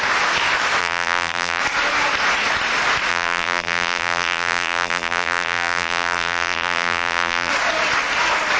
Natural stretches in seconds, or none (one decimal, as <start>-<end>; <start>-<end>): 0.0-0.8; 1.6-3.1; 7.5-8.6